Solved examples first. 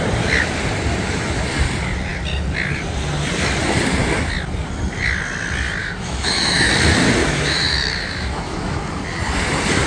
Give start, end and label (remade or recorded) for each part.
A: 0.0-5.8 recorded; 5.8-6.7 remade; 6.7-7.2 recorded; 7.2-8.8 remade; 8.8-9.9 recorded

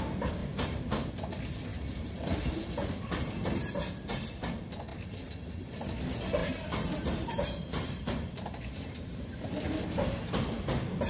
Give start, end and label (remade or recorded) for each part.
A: 0.0-0.4 recorded; 0.4-1.1 remade; 1.1-1.7 recorded; 1.7-3.7 remade; 3.7-6.4 recorded; 6.4-9.6 remade; 9.6-11.1 recorded

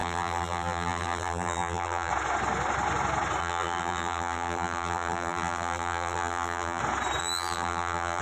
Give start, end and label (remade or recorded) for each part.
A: 0.0-2.1 remade; 2.1-3.4 recorded; 3.4-6.8 remade; 6.8-7.2 recorded; 7.2-8.2 remade

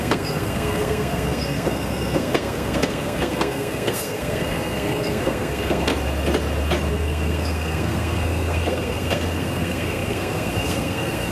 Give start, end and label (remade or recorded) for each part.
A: 0.0-5.9 remade; 5.9-6.9 recorded; 6.9-11.3 remade

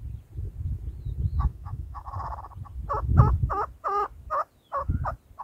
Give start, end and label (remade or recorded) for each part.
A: 0.0-1.5 recorded; 1.5-2.1 remade; 2.1-5.4 recorded

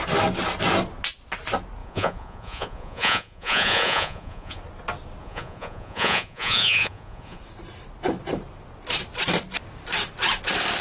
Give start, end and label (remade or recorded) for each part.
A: 0.0-1.8 recorded; 1.8-4.6 remade; 4.6-5.2 recorded; 5.2-7.4 remade; 7.4-10.8 recorded

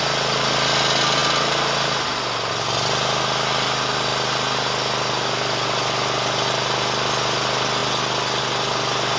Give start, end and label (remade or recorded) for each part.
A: 0.0-9.2 recorded